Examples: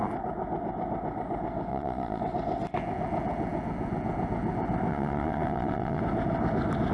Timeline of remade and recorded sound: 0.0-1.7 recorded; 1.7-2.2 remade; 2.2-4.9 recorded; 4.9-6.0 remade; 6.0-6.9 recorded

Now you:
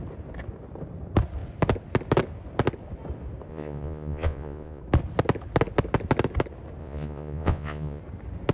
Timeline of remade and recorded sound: 0.0-3.5 recorded; 3.5-4.8 remade; 4.8-6.8 recorded; 6.8-8.0 remade; 8.0-8.5 recorded